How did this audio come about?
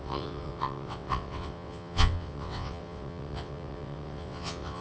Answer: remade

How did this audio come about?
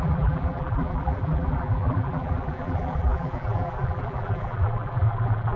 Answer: remade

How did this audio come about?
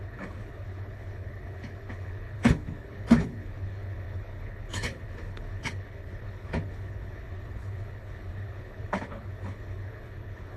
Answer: remade